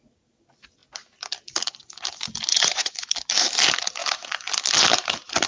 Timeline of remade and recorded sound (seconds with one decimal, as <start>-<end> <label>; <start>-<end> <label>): 0.0-2.5 recorded; 2.5-3.1 remade; 3.1-5.5 recorded